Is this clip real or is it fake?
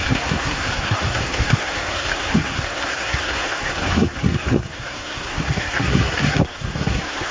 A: fake